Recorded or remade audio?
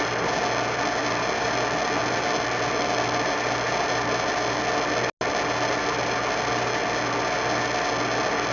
recorded